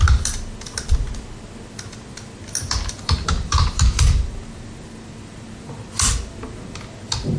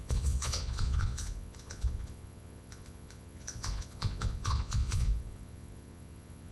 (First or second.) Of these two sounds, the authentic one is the first